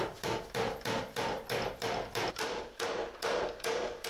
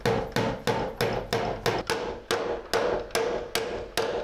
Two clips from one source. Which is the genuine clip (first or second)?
second